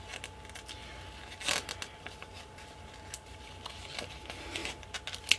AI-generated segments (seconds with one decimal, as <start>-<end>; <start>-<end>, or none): none